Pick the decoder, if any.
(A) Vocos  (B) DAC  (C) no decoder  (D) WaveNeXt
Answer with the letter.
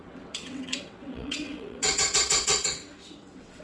D